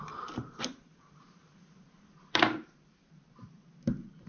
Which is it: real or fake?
fake